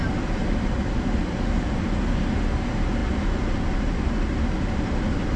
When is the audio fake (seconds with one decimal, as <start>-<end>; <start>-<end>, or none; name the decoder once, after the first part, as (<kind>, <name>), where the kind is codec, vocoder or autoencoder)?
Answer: none